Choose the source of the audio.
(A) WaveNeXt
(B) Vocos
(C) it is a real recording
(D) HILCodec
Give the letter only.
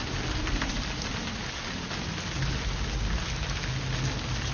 C